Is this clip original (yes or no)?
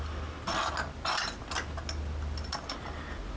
yes